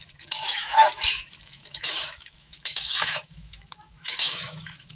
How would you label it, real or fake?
fake